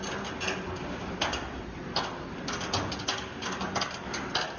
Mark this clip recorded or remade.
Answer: recorded